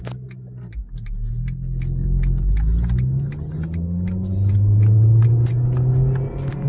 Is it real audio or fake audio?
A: real